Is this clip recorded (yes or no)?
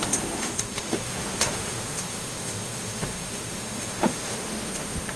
no